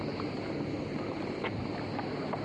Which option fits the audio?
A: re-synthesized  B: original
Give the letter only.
B